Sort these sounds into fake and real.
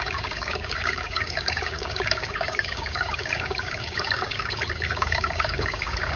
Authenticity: fake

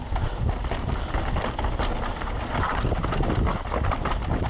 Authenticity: real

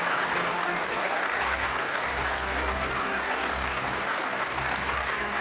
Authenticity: fake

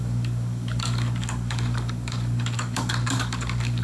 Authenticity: fake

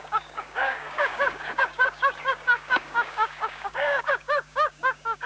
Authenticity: fake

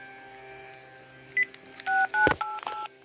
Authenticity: real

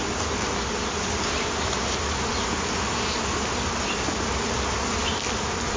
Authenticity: real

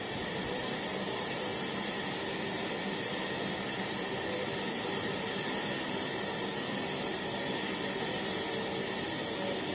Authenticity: real